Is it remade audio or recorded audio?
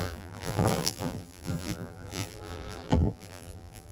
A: remade